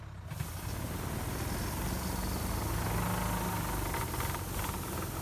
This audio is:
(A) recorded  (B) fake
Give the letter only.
A